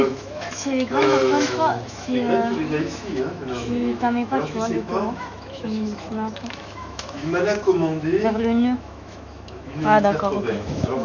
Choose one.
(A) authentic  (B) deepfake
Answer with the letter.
B